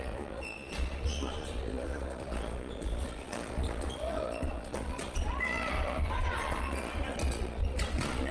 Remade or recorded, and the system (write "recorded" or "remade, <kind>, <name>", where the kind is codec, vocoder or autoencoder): remade, vocoder, Vocos